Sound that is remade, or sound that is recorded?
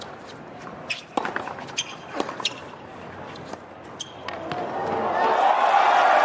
recorded